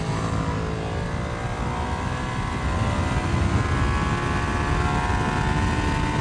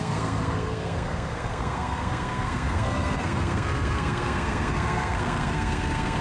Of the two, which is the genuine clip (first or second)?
first